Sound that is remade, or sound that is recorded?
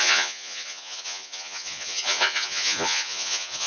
remade